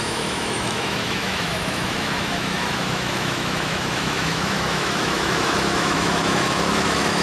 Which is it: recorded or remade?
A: remade